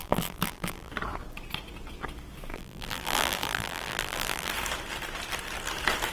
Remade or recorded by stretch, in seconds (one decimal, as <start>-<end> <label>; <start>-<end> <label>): 0.0-0.9 remade; 0.9-2.5 recorded; 2.5-4.5 remade; 4.5-6.1 recorded